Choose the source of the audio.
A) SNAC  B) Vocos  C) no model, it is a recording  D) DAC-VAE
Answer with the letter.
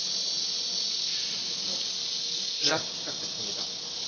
C